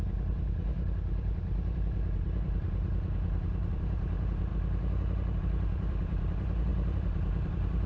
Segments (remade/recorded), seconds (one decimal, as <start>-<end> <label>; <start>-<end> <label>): 0.0-4.5 remade; 4.5-5.4 recorded; 5.4-7.9 remade